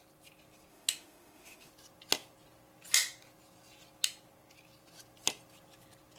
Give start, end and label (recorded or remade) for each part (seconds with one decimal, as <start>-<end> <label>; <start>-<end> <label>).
0.0-0.7 recorded; 0.7-1.7 remade; 1.7-6.2 recorded